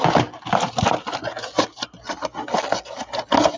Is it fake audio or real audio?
real